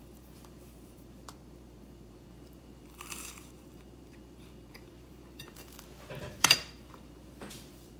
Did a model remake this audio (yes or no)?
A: yes